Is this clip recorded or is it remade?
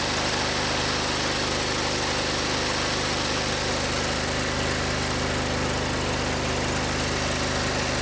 recorded